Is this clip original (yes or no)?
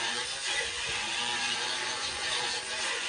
no